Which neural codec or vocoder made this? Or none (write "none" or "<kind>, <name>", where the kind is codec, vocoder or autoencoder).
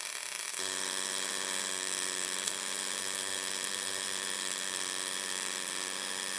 autoencoder, DAC-VAE